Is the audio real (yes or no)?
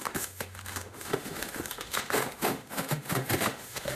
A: no